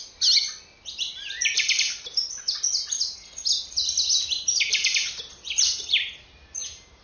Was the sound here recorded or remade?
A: recorded